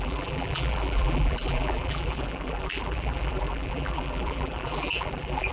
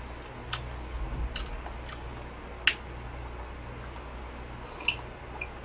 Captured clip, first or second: second